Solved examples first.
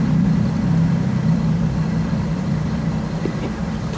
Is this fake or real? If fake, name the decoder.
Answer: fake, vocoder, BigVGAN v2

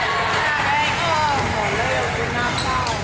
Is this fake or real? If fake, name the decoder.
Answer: real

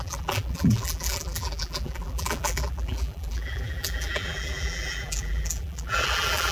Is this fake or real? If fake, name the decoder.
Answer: fake, vocoder, BigVGAN v2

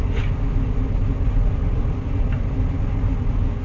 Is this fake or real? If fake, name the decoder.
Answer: real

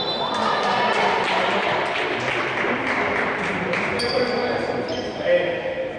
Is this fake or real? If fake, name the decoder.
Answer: real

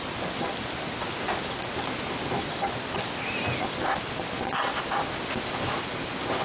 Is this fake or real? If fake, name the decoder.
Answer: real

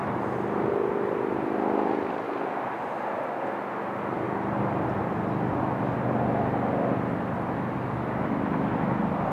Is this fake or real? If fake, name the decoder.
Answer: real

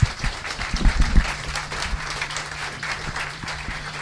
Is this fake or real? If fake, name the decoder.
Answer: fake, vocoder, BigVGAN v2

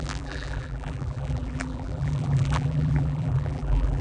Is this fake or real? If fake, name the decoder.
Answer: fake, vocoder, BigVGAN v2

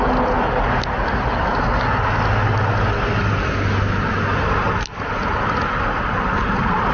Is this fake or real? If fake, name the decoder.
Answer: real